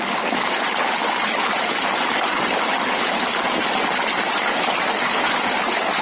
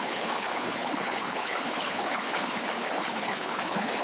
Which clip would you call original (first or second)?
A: first